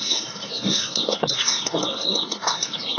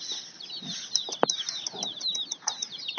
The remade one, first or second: first